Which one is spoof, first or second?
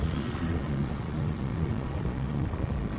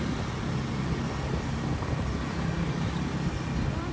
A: first